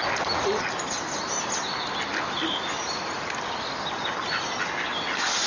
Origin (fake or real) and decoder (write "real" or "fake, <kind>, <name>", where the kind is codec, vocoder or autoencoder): real